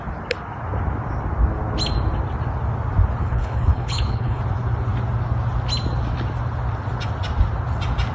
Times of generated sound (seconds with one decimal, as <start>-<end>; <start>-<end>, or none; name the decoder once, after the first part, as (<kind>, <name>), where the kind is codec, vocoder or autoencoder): 3.2-4.4 (codec, HILCodec)